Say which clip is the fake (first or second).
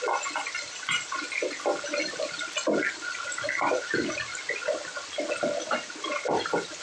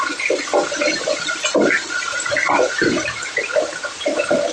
second